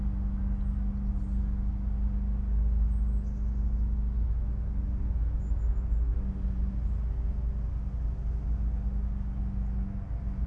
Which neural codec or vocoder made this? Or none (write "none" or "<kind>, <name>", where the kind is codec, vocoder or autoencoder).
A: none